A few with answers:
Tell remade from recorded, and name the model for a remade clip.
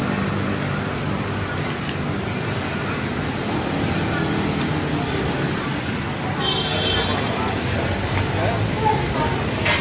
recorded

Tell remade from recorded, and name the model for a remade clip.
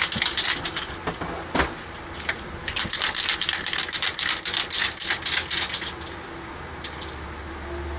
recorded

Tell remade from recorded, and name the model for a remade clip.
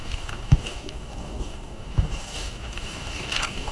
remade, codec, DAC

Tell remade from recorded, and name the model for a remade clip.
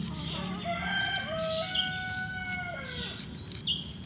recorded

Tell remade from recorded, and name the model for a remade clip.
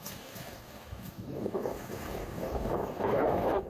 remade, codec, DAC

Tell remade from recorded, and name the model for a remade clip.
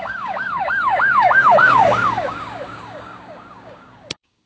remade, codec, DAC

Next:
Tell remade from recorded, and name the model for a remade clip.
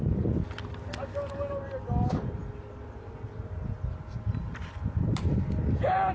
recorded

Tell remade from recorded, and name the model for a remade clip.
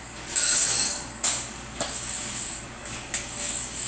remade, codec, DAC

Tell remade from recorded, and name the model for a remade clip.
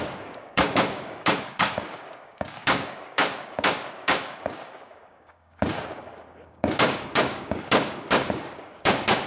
remade, codec, DAC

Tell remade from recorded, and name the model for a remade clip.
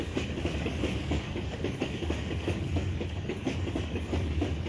remade, codec, DAC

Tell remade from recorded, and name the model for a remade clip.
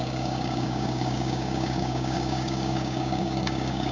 remade, codec, DAC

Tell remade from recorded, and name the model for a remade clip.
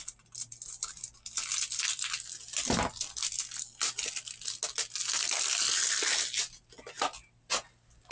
recorded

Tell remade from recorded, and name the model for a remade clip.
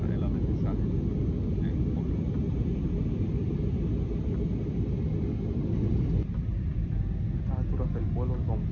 recorded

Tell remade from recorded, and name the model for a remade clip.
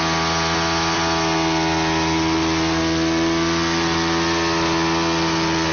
recorded